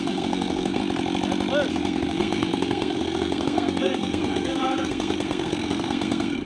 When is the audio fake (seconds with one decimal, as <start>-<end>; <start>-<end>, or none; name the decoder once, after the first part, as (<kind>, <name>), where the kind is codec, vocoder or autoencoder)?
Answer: 0.0-0.8 (codec, SNAC); 1.7-6.5